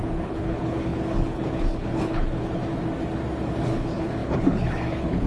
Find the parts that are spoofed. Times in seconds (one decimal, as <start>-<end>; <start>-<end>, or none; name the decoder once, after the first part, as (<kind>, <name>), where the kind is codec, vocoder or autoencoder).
0.0-2.6 (codec, HILCodec); 3.6-5.3